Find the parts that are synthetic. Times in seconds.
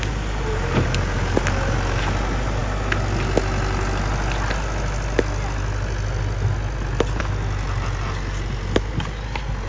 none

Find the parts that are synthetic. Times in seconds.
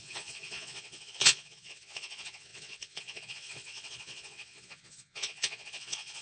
0.0-6.2 (vocoder, Vocos)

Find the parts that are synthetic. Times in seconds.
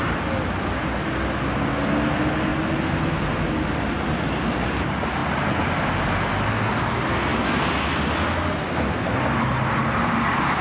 none